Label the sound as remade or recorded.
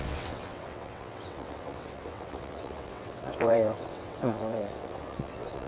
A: remade